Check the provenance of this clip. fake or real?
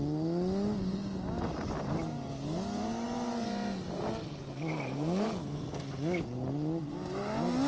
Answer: real